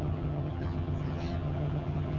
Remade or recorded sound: remade